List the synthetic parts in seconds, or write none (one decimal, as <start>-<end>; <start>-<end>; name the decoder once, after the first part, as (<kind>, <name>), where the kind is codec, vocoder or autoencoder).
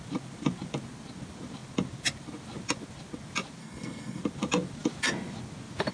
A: 3.6-4.2 (codec, SNAC)